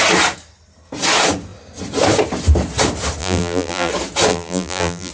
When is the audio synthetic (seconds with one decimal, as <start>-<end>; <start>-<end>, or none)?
3.2-3.9; 4.3-5.1